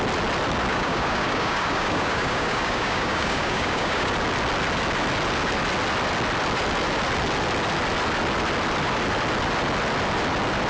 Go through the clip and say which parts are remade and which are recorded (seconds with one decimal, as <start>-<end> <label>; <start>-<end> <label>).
0.0-0.7 recorded; 0.7-4.1 remade; 4.1-10.7 recorded